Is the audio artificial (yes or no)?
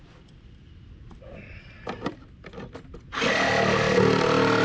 no